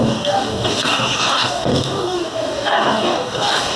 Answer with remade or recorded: remade